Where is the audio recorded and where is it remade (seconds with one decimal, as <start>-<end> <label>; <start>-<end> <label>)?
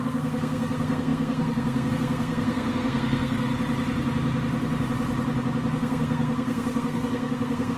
0.0-3.5 remade; 3.5-5.7 recorded; 5.7-7.8 remade